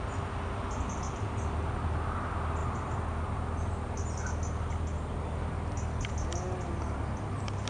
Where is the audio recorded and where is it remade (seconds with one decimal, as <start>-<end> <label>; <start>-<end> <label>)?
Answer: 0.0-7.7 recorded